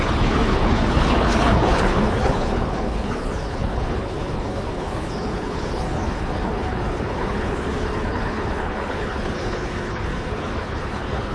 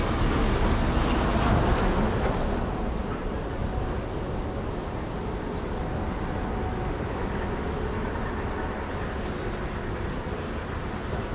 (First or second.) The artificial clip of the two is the first